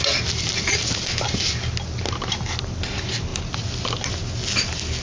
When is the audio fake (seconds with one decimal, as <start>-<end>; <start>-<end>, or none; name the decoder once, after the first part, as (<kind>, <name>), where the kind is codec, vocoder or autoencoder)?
none